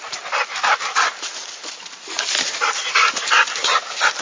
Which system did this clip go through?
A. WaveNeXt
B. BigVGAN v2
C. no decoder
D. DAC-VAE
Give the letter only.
B